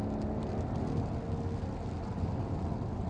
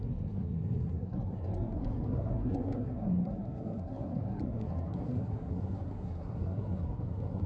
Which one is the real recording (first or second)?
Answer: first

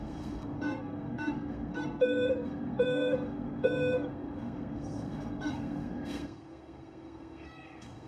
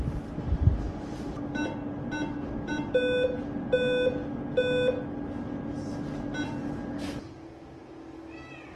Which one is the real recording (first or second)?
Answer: second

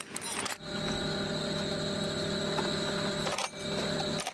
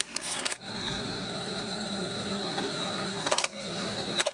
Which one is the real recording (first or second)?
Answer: first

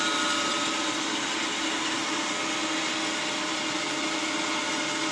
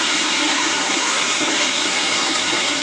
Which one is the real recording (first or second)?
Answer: first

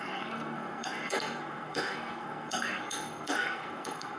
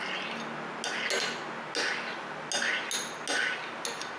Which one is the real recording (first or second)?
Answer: second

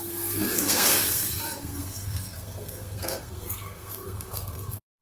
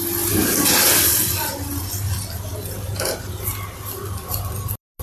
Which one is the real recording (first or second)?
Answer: second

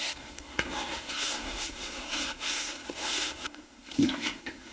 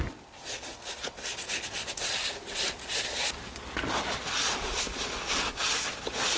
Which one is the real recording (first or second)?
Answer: second